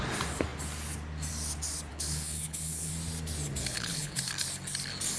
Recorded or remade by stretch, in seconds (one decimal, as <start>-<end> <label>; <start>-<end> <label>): 0.0-1.9 recorded; 1.9-2.9 remade; 2.9-3.6 recorded; 3.6-4.3 remade; 4.3-5.2 recorded